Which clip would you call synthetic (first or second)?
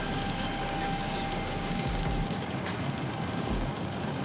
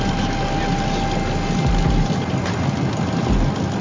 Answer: first